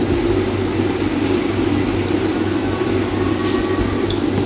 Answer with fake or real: real